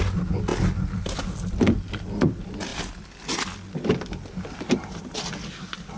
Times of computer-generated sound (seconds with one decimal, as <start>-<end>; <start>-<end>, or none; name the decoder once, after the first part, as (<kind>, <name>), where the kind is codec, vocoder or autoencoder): none